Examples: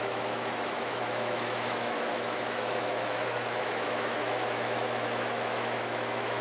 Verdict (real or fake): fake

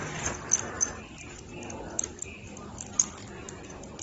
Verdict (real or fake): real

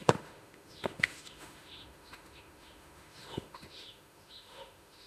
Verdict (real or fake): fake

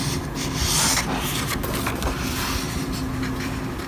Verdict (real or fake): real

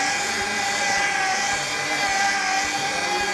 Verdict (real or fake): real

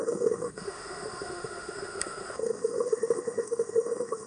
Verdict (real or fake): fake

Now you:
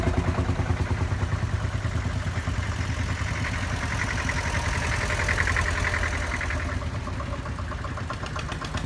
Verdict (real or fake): real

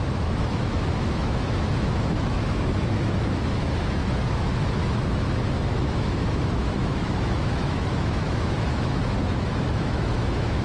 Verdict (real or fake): fake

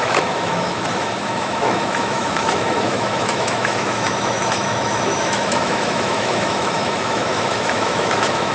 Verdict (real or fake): fake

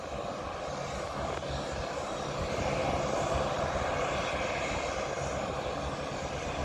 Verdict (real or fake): real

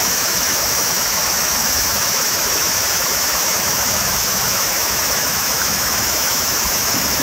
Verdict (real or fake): fake